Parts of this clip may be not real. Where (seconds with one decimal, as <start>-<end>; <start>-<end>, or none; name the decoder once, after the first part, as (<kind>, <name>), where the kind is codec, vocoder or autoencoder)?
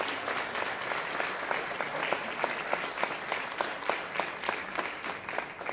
4.6-5.1 (codec, DAC)